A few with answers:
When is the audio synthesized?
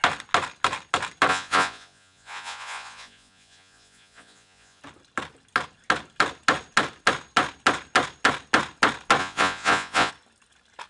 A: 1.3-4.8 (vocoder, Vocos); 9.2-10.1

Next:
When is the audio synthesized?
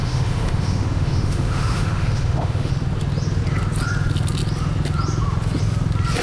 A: 0.0-2.7 (autoencoder, DAC-VAE)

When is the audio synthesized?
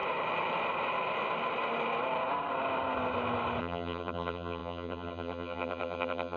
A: 3.6-6.4 (vocoder, BigVGAN v2)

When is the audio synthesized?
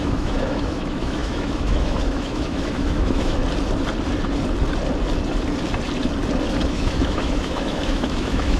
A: 0.0-3.4 (autoencoder, DAC-VAE); 6.7-8.6